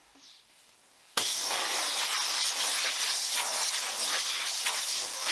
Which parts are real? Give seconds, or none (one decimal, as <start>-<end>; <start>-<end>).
1.6-4.8